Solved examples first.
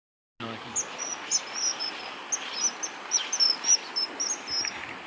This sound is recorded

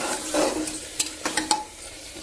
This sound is remade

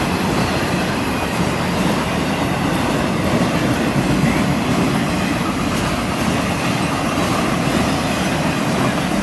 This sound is recorded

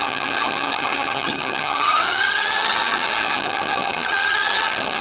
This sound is remade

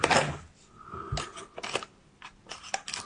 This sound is recorded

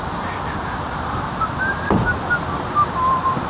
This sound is recorded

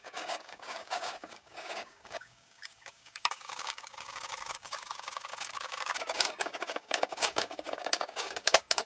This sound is remade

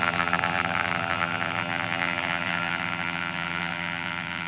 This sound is remade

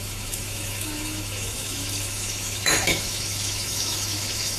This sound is remade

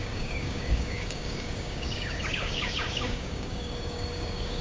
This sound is remade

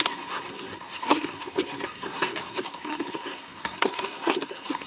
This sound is remade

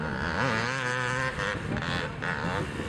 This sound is recorded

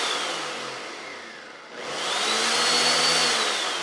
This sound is recorded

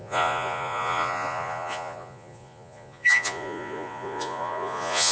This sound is remade